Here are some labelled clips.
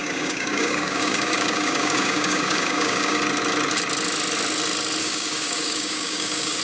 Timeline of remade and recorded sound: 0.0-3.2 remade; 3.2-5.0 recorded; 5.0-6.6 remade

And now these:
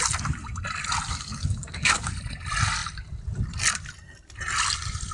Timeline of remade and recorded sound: 0.0-1.1 recorded; 1.1-2.1 remade; 2.1-5.1 recorded

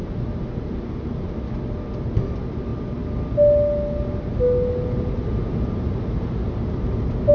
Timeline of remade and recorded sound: 0.0-7.3 recorded

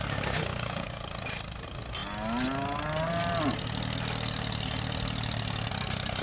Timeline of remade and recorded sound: 0.0-0.5 recorded; 0.5-1.0 remade; 1.0-6.2 recorded

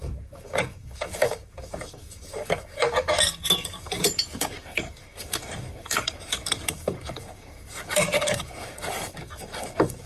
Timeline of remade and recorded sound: 0.0-10.1 remade

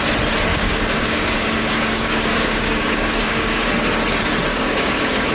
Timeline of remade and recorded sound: 0.0-0.5 recorded; 0.5-3.7 remade; 3.7-4.5 recorded; 4.5-5.3 remade

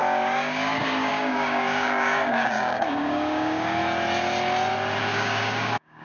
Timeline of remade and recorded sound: 0.0-3.8 remade; 3.8-5.0 recorded; 5.0-6.0 remade